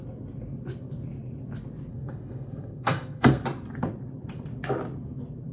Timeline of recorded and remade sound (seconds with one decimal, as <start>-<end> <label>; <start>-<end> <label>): 0.0-1.9 recorded; 1.9-3.4 remade; 3.4-5.5 recorded